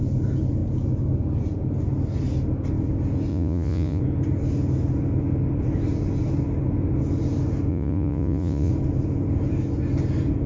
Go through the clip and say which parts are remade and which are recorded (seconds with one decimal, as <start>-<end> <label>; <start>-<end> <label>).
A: 0.0-3.3 recorded; 3.3-4.0 remade; 4.0-7.7 recorded; 7.7-8.7 remade; 8.7-10.5 recorded